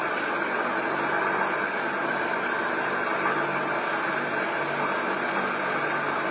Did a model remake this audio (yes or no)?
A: no